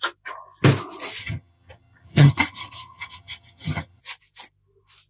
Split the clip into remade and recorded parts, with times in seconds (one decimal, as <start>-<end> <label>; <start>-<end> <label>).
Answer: 0.0-1.2 recorded; 1.2-4.0 remade; 4.0-5.1 recorded